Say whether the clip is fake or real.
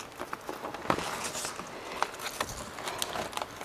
real